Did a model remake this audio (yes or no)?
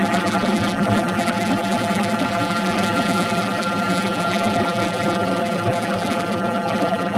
yes